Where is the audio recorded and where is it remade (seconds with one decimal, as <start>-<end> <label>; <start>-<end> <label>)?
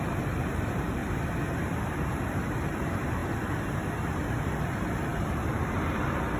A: 0.0-1.0 remade; 1.0-1.8 recorded; 1.8-3.2 remade; 3.2-4.1 recorded; 4.1-6.4 remade